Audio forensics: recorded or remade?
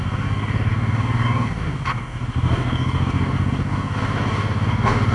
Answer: remade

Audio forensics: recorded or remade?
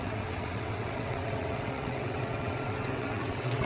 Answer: remade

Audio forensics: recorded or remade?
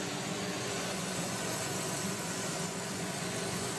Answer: remade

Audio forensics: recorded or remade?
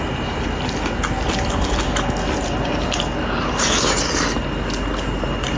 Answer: recorded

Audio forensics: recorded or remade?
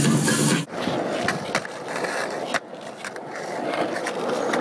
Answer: recorded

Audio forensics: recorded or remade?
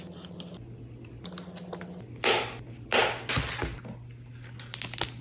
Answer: recorded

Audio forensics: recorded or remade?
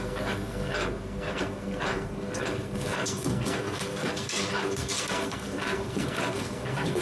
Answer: remade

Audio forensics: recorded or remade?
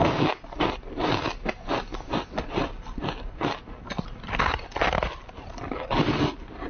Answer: recorded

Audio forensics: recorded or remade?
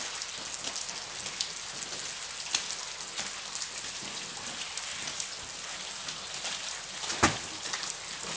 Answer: recorded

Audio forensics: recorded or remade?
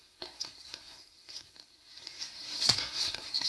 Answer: remade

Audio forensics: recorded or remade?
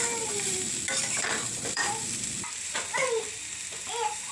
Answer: remade